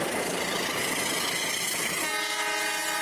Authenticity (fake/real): real